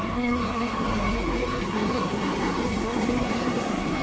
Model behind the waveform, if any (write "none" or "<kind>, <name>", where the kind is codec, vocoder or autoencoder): codec, SNAC